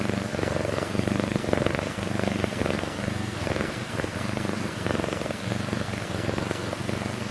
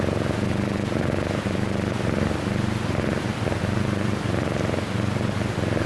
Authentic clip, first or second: second